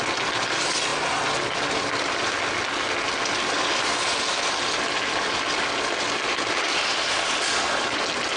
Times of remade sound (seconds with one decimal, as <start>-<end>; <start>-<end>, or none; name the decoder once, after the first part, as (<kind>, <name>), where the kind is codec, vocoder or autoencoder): none